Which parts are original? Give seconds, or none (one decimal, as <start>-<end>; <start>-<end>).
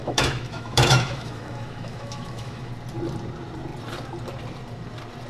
2.7-5.3